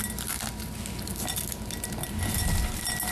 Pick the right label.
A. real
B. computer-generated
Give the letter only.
A